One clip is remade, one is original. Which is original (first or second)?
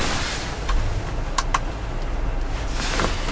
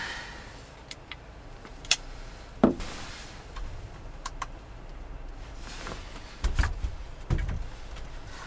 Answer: first